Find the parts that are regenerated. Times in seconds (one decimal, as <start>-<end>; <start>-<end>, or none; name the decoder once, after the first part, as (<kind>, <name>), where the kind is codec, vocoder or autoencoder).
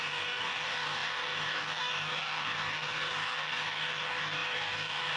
0.0-5.2 (codec, DAC)